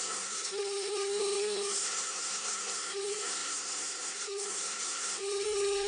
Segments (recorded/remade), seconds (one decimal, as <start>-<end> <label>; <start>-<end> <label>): 0.0-5.9 remade